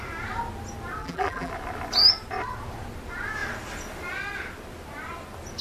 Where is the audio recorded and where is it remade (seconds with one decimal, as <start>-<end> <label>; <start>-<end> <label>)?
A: 0.0-1.0 recorded; 1.0-1.5 remade; 1.5-5.6 recorded